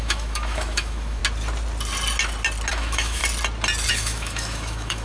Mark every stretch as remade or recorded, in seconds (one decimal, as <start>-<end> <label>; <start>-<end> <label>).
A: 0.0-1.2 remade; 1.2-2.7 recorded; 2.7-3.2 remade; 3.2-3.9 recorded; 3.9-5.0 remade

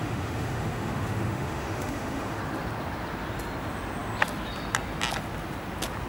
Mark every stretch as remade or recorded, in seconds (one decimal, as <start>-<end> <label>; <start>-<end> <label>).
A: 0.0-2.4 remade; 2.4-6.1 recorded

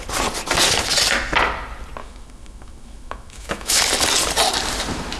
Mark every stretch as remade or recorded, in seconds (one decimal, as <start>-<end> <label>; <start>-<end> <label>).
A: 0.0-2.0 recorded; 2.0-3.8 remade; 3.8-5.2 recorded

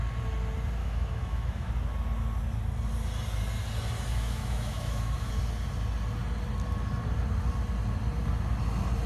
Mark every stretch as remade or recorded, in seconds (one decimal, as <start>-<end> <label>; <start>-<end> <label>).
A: 0.0-0.8 recorded; 0.8-1.7 remade; 1.7-4.1 recorded; 4.1-5.3 remade; 5.3-9.1 recorded

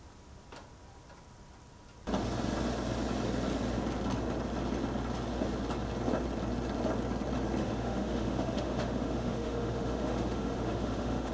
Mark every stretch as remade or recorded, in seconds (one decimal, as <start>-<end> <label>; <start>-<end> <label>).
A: 0.0-7.6 recorded; 7.6-11.3 remade